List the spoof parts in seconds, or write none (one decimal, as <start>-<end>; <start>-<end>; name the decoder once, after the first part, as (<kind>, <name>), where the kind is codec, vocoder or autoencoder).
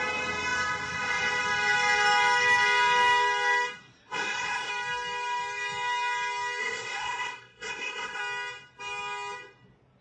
4.1-4.7 (codec, SNAC); 6.6-8.2